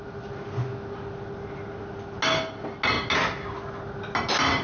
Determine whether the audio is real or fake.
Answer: real